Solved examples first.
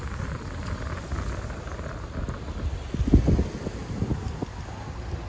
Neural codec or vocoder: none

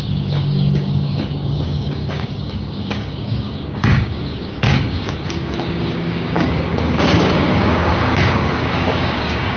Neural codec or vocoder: codec, DAC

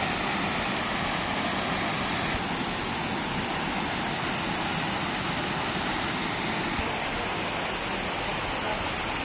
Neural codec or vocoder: none